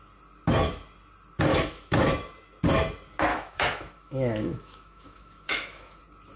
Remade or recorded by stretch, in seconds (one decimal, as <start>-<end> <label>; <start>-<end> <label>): 0.0-1.5 recorded; 1.5-2.1 remade; 2.1-3.3 recorded; 3.3-6.0 remade; 6.0-6.4 recorded